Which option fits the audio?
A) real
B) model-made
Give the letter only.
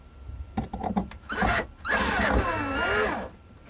A